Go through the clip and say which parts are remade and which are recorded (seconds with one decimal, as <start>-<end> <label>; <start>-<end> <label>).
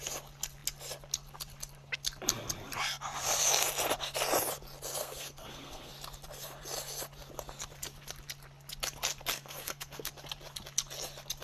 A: 0.0-5.0 recorded; 5.0-5.9 remade; 5.9-9.3 recorded; 9.3-10.1 remade; 10.1-11.4 recorded